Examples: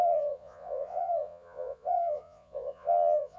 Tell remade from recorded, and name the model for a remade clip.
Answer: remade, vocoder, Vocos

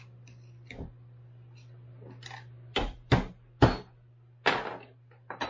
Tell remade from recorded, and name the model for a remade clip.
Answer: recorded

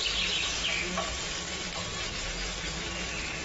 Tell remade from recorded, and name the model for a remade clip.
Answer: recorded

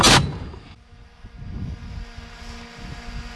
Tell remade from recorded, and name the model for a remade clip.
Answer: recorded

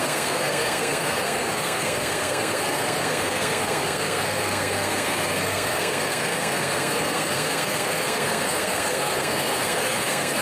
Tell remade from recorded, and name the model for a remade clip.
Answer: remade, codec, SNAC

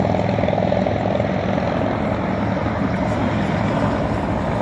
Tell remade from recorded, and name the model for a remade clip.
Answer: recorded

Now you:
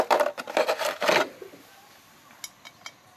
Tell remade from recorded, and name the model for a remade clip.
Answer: recorded